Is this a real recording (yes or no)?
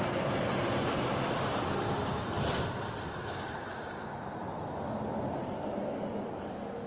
yes